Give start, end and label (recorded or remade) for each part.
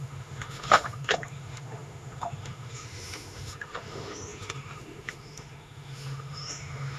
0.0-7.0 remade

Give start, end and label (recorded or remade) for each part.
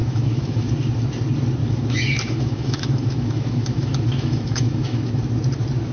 0.0-0.7 remade; 0.7-1.6 recorded; 1.6-5.1 remade; 5.1-5.9 recorded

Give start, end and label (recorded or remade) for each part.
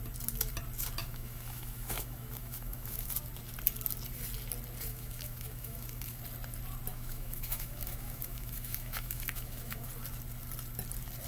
0.0-1.0 recorded; 1.0-3.1 remade; 3.1-4.9 recorded; 4.9-6.2 remade; 6.2-6.9 recorded; 6.9-9.9 remade; 9.9-11.3 recorded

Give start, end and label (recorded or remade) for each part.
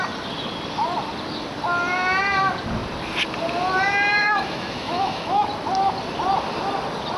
0.0-4.2 recorded; 4.2-5.4 remade; 5.4-7.2 recorded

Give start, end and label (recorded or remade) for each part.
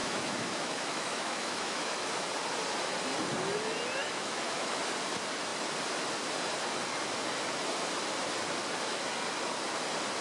0.0-2.1 remade; 2.1-4.0 recorded; 4.0-4.8 remade; 4.8-10.2 recorded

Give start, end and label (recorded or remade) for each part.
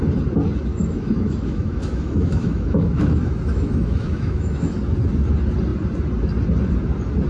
0.0-0.7 recorded; 0.7-4.8 remade; 4.8-7.3 recorded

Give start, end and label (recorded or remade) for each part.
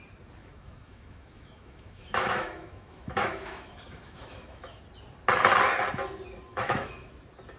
0.0-0.4 recorded; 0.4-4.8 remade; 4.8-6.5 recorded; 6.5-7.1 remade; 7.1-7.6 recorded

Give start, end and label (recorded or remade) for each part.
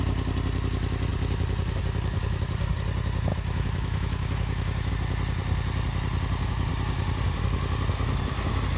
0.0-3.3 recorded; 3.3-4.9 remade; 4.9-8.8 recorded